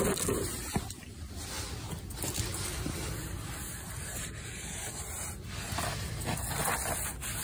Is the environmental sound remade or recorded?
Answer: recorded